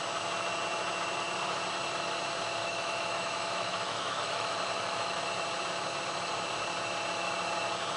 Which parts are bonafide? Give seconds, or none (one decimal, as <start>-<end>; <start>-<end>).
0.0-2.6; 5.2-8.0